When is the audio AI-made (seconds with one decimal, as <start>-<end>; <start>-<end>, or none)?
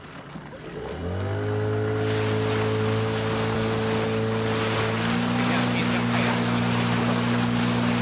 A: none